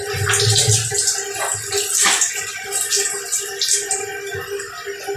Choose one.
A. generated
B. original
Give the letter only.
B